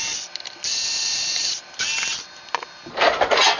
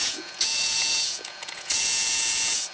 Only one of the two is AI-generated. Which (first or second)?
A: second